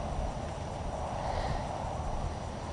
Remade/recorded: recorded